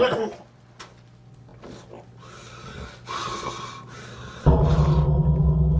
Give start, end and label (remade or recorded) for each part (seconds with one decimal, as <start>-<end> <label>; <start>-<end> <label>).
0.0-5.8 recorded